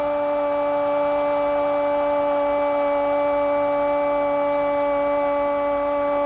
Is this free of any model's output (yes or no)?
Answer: yes